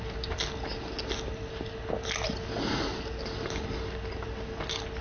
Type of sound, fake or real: real